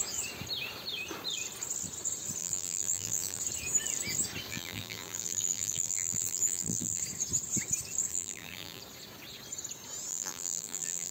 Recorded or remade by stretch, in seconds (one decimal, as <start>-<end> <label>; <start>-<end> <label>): 0.0-2.4 recorded; 2.4-3.4 remade; 3.4-4.5 recorded; 4.5-7.0 remade; 7.0-8.1 recorded; 8.1-8.8 remade; 8.8-10.1 recorded; 10.1-11.1 remade